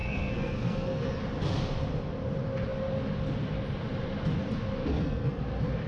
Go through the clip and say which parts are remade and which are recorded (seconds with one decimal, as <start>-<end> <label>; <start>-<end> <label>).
0.0-1.2 remade; 1.2-4.9 recorded; 4.9-5.4 remade; 5.4-5.9 recorded